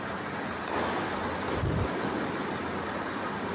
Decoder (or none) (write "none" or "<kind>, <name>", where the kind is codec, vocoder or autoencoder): none